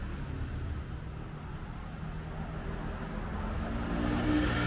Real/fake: real